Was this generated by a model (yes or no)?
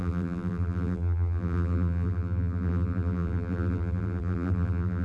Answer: yes